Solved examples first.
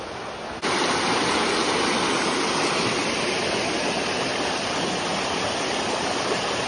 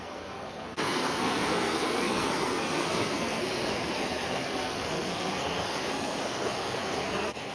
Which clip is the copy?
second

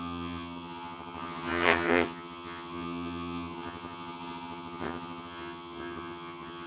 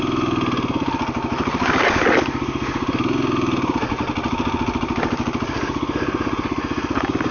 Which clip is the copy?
first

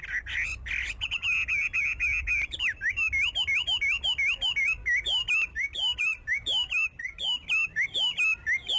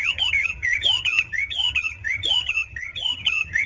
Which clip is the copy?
second